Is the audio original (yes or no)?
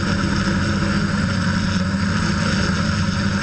yes